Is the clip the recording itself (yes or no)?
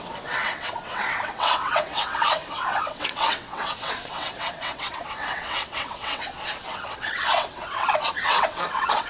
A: no